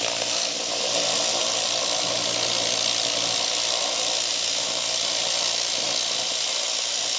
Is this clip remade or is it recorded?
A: recorded